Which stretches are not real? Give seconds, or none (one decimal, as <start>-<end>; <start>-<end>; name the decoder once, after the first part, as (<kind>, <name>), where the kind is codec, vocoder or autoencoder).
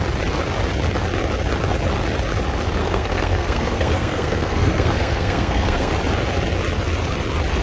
2.8-5.9 (codec, SNAC)